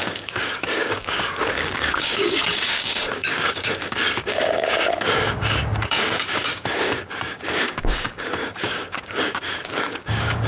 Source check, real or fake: fake